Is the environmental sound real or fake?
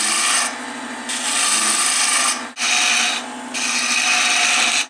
real